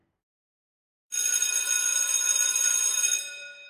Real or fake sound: real